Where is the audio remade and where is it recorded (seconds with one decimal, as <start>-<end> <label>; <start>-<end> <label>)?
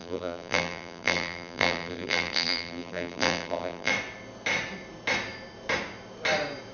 0.0-3.9 remade; 3.9-6.7 recorded